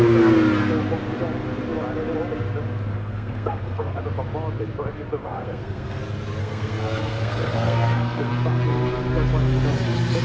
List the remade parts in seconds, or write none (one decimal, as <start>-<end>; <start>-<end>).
2.9-4.0; 5.2-6.0; 6.4-8.3